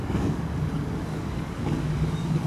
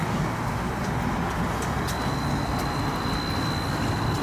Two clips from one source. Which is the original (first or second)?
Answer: second